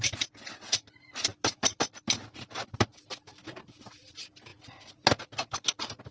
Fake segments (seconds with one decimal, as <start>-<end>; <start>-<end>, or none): 1.3-4.1